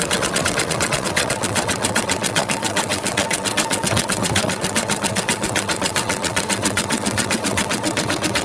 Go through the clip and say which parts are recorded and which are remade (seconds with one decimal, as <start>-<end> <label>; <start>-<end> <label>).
0.0-8.4 remade